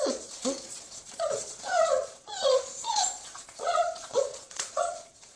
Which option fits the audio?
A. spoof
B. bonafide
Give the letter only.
A